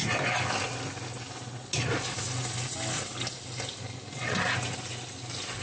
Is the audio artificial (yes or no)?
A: no